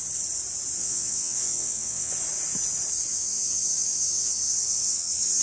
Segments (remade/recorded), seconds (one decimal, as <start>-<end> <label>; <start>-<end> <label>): 0.0-0.8 recorded; 0.8-2.1 remade; 2.1-3.1 recorded; 3.1-5.4 remade